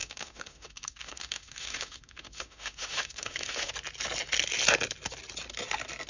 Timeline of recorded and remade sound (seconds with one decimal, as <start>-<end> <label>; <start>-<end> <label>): 0.0-3.7 remade; 3.7-6.1 recorded